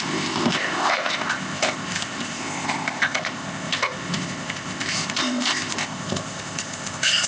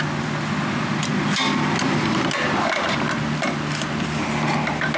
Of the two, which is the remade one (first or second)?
first